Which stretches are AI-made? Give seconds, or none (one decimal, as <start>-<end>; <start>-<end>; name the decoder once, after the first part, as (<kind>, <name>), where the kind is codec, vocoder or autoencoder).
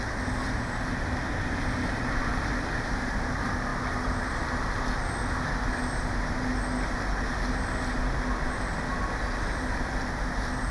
none